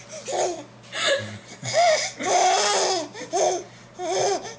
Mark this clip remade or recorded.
recorded